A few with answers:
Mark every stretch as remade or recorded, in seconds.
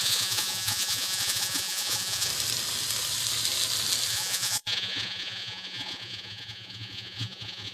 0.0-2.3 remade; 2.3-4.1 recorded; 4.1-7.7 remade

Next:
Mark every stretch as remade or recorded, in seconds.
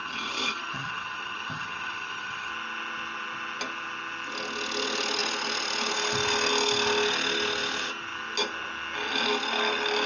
0.0-2.5 remade; 2.5-10.1 recorded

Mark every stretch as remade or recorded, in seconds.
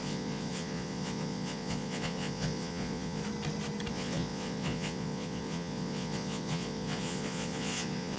0.0-3.2 remade; 3.2-3.9 recorded; 3.9-8.2 remade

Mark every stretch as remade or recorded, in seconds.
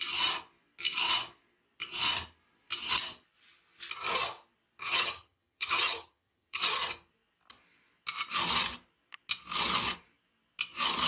0.0-4.8 recorded; 4.8-6.6 remade; 6.6-11.1 recorded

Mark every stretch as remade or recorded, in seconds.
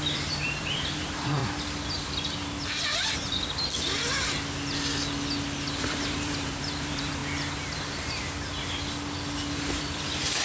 0.0-1.4 remade; 1.4-5.8 recorded; 5.8-7.2 remade; 7.2-9.5 recorded; 9.5-10.4 remade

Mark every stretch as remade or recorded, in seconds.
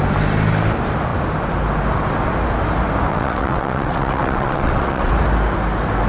0.0-3.1 recorded; 3.1-5.1 remade; 5.1-6.1 recorded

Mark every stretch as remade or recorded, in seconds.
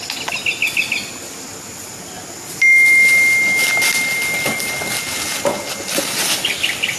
0.0-0.6 recorded; 0.6-2.3 remade; 2.3-7.0 recorded